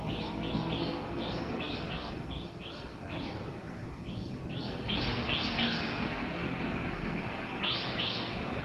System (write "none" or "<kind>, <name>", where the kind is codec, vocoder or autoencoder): codec, SNAC